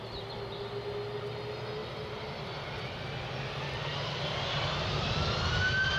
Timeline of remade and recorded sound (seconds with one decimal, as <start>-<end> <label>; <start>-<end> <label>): 0.0-1.8 recorded; 1.8-5.1 remade; 5.1-6.0 recorded